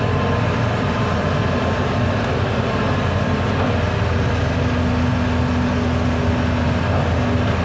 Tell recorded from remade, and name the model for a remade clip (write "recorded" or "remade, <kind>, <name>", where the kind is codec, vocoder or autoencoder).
recorded